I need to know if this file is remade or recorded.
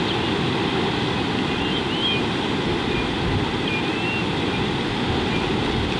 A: recorded